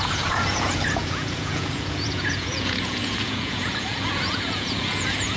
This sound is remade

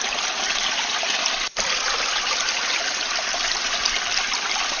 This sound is recorded